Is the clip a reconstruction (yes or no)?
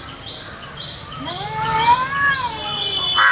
no